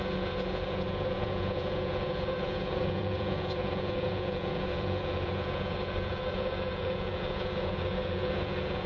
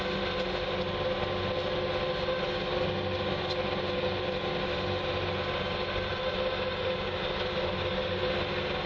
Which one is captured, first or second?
second